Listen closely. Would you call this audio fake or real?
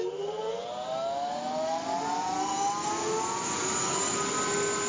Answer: real